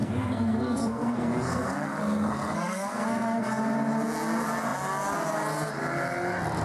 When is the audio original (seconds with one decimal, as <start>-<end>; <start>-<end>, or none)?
3.6-6.6